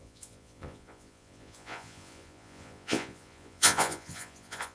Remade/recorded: remade